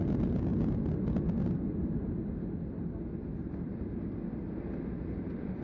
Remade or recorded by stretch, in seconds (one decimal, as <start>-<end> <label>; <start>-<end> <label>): 0.0-5.6 recorded